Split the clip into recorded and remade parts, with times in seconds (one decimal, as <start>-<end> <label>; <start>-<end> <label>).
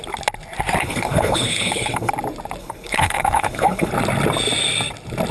0.0-0.8 recorded; 0.8-2.1 remade; 2.1-2.6 recorded; 2.6-3.9 remade; 3.9-5.3 recorded